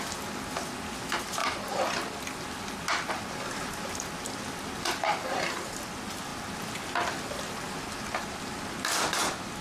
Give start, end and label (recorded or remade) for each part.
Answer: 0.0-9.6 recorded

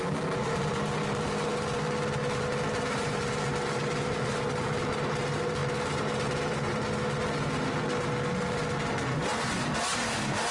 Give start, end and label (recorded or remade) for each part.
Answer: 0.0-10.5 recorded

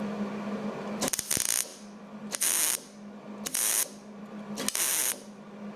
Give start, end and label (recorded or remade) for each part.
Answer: 0.0-5.8 recorded

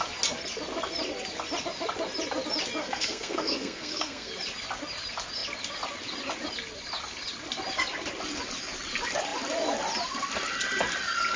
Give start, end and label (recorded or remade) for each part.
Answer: 0.0-2.8 recorded; 2.8-4.3 remade; 4.3-11.4 recorded